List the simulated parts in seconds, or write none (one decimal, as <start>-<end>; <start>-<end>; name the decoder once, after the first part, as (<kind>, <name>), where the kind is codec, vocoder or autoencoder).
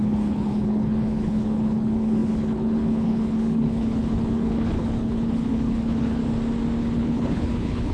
0.0-6.2 (codec, HILCodec); 6.8-7.9